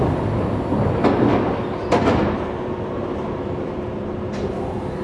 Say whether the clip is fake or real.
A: real